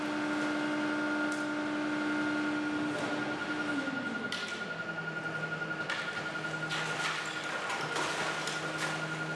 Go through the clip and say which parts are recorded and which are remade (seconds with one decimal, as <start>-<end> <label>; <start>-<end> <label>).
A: 0.0-9.4 recorded